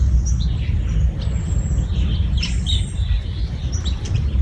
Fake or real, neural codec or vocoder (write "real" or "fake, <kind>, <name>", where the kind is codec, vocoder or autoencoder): real